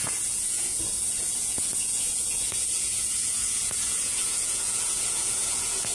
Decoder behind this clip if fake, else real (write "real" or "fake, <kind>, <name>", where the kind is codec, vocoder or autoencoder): fake, vocoder, Vocos